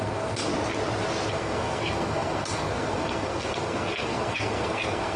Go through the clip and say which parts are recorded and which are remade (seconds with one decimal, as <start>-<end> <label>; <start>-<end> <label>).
0.0-0.5 remade; 0.5-1.3 recorded; 1.3-5.2 remade